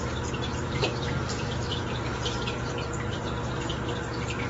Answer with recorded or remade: recorded